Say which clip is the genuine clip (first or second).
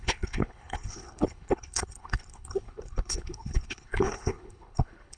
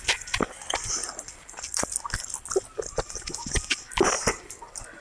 second